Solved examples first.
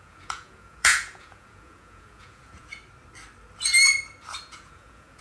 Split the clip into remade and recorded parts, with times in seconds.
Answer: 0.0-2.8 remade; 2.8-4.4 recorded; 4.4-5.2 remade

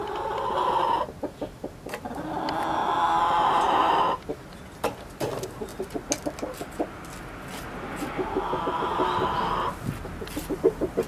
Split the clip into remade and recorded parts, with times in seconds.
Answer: 0.0-11.1 recorded

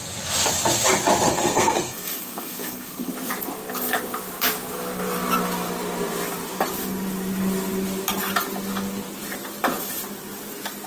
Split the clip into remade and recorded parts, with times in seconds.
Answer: 0.0-1.3 recorded; 1.3-3.1 remade; 3.1-10.9 recorded

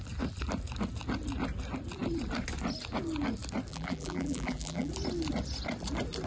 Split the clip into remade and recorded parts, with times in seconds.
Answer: 0.0-3.7 recorded; 3.7-4.9 remade; 4.9-6.3 recorded

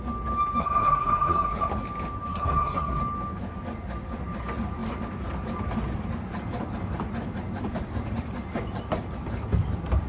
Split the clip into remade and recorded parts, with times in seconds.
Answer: 0.0-0.6 recorded; 0.6-1.7 remade; 1.7-2.3 recorded; 2.3-3.0 remade; 3.0-10.1 recorded

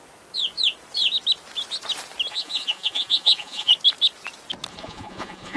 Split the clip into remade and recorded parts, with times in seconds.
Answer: 0.0-2.3 recorded; 2.3-3.7 remade; 3.7-4.7 recorded; 4.7-5.6 remade